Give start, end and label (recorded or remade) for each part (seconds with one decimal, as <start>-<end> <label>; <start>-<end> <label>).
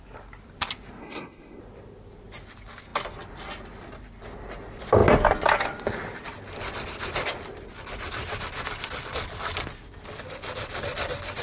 0.0-1.0 recorded; 1.0-1.6 remade; 1.6-11.4 recorded